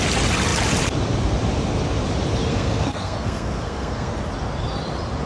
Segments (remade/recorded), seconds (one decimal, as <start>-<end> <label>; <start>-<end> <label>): 0.0-2.5 recorded; 2.5-4.2 remade; 4.2-5.3 recorded